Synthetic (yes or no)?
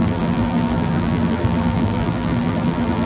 yes